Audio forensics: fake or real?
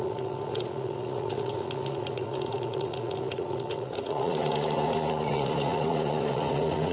fake